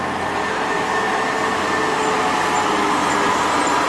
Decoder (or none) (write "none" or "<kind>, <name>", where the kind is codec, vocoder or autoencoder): none